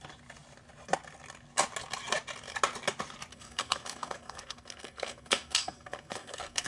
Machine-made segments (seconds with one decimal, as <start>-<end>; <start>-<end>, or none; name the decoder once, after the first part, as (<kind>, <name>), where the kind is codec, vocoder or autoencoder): 3.3-6.7 (codec, SNAC)